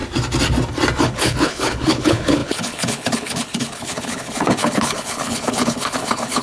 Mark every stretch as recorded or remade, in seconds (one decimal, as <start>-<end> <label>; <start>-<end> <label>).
0.0-1.0 recorded; 1.0-6.4 remade